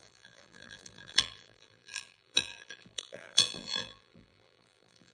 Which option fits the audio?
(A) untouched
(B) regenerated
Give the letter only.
B